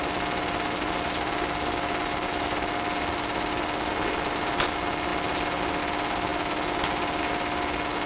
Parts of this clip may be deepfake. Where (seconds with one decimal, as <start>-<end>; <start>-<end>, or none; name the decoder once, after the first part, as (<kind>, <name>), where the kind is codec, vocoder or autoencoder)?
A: none